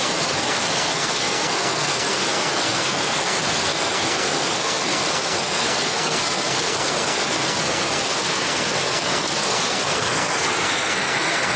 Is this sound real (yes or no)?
no